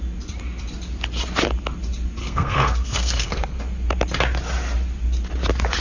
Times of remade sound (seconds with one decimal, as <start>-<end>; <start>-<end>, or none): 2.2-3.6